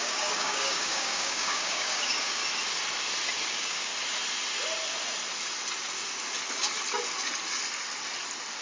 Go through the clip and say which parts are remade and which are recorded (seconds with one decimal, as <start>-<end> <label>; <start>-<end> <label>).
0.0-2.4 remade; 2.4-3.5 recorded; 3.5-3.9 remade; 3.9-8.6 recorded